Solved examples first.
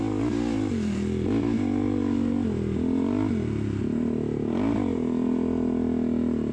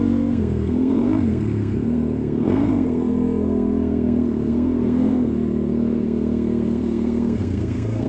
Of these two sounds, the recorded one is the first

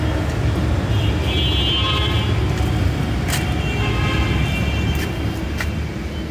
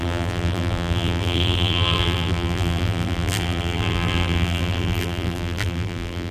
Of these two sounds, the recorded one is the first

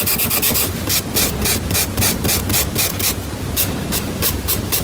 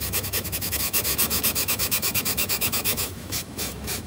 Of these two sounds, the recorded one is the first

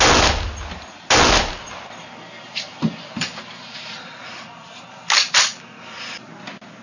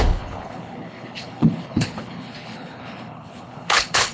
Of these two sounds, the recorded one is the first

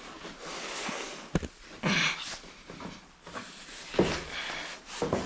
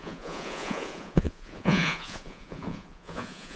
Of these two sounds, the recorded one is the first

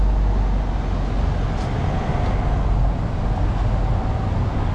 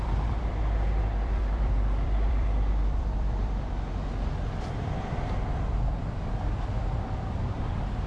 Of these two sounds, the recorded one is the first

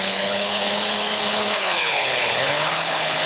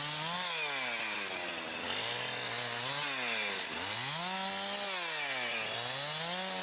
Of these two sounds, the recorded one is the second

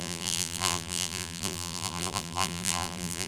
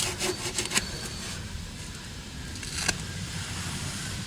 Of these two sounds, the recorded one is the second